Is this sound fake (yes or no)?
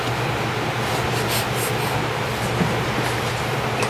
no